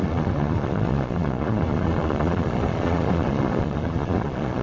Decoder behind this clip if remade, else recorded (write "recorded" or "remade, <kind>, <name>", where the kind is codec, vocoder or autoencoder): remade, vocoder, Vocos